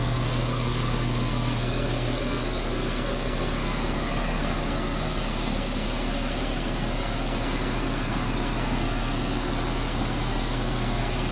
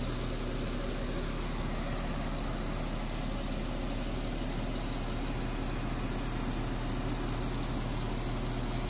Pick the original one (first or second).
second